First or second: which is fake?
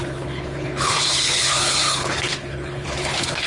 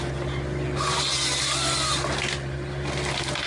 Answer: first